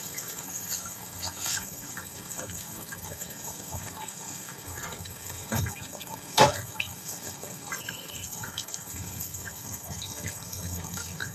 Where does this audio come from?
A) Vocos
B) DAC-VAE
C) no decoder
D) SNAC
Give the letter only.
D